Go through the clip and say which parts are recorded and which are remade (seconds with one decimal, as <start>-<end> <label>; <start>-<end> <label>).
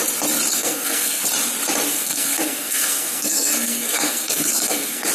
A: 0.0-0.5 recorded; 0.5-1.2 remade; 1.2-1.9 recorded; 1.9-5.1 remade